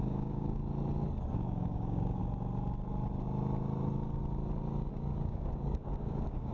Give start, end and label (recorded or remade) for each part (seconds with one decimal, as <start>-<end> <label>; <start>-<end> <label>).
0.0-0.6 remade; 0.6-1.3 recorded; 1.3-2.2 remade; 2.2-4.9 recorded; 4.9-6.5 remade